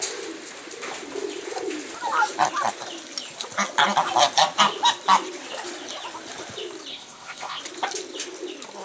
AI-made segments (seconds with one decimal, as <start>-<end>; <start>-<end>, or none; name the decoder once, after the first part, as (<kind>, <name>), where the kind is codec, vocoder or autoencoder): 6.9-7.6 (codec, ZipCodec)